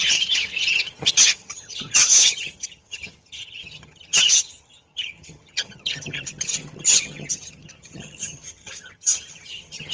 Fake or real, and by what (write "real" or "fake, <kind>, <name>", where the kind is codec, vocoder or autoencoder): fake, vocoder, HiFi-GAN